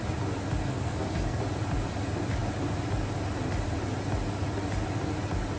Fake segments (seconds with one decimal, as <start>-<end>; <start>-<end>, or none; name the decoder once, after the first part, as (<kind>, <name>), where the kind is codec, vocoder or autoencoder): 0.7-1.4 (codec, SNAC)